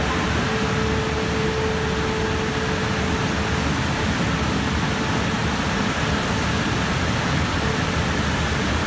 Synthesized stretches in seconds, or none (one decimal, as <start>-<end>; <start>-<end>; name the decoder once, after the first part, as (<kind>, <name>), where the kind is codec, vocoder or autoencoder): none